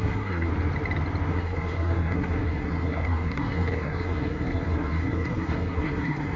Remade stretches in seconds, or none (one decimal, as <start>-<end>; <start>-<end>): 0.0-0.5; 1.3-6.4